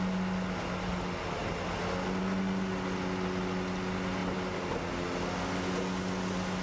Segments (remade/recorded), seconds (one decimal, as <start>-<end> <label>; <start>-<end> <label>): 0.0-6.6 recorded